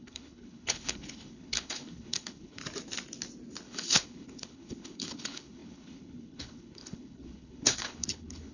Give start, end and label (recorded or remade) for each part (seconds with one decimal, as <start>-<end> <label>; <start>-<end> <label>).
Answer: 0.0-2.6 remade; 2.6-3.6 recorded; 3.6-8.5 remade